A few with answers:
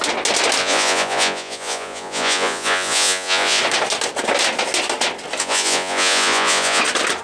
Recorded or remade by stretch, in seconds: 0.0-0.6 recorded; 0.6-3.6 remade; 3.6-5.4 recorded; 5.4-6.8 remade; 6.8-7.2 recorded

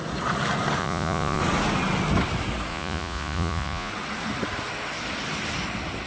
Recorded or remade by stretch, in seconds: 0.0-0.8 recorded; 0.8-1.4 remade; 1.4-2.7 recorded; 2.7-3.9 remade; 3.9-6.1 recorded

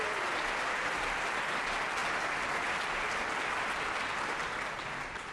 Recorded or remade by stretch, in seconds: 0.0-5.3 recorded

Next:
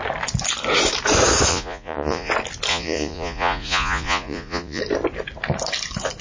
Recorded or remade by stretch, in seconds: 0.0-1.5 recorded; 1.5-2.3 remade; 2.3-2.7 recorded; 2.7-4.8 remade; 4.8-6.2 recorded

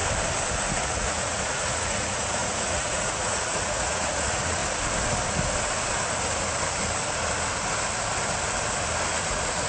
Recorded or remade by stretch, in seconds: 0.0-0.5 recorded; 0.5-4.6 remade; 4.6-9.2 recorded; 9.2-9.7 remade

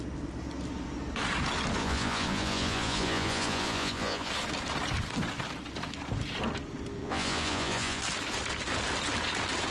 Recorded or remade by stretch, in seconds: 0.0-1.8 recorded; 1.8-4.3 remade; 4.3-7.0 recorded; 7.0-8.0 remade; 8.0-9.7 recorded